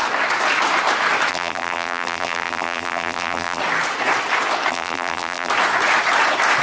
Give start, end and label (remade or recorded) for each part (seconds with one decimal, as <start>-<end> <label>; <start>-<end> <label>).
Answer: 0.0-1.3 recorded; 1.3-3.6 remade; 3.6-4.7 recorded; 4.7-5.5 remade; 5.5-6.6 recorded